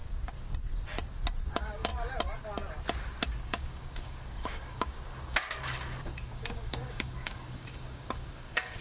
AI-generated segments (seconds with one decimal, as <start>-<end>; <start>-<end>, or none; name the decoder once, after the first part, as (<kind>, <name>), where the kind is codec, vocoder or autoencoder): 1.5-1.9 (codec, DAC); 3.4-8.8